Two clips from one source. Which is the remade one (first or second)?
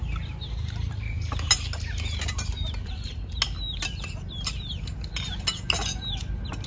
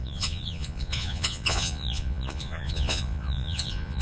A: second